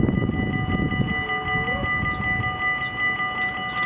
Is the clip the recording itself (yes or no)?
yes